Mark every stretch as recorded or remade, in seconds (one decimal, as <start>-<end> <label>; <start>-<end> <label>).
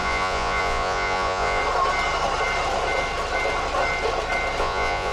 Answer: 0.0-1.6 remade; 1.6-4.6 recorded; 4.6-5.1 remade